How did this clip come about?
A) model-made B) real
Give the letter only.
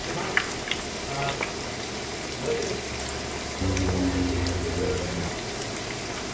B